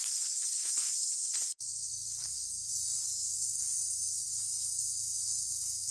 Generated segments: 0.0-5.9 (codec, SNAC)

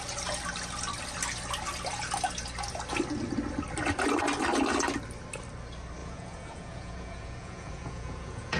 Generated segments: 6.0-8.6 (vocoder, Vocos)

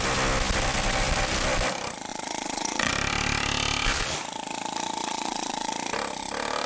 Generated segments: 2.1-2.9 (vocoder, Vocos); 5.0-5.7